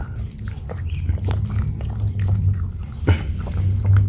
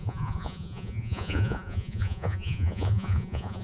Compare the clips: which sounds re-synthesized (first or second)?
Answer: second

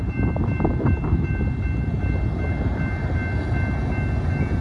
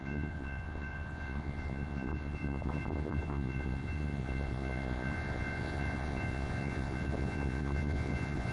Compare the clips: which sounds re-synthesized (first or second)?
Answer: second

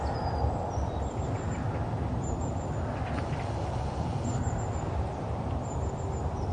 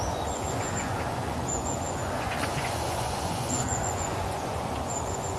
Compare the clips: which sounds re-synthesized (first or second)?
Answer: second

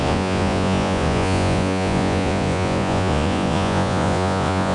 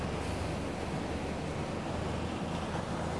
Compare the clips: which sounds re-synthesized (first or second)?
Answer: first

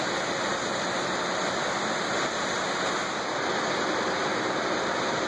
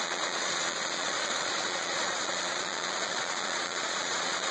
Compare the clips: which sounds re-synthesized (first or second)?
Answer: second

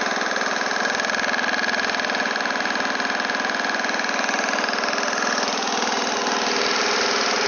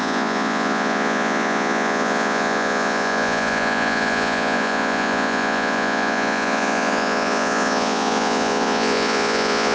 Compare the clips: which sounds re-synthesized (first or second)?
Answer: second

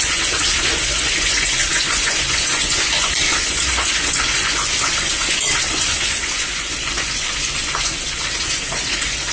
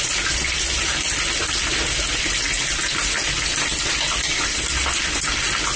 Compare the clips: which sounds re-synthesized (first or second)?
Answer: first